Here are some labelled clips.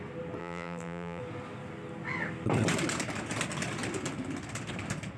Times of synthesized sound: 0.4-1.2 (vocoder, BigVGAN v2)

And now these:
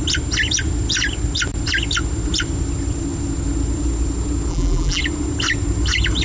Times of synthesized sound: 4.5-5.0 (vocoder, BigVGAN v2)